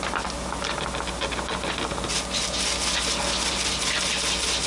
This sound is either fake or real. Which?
real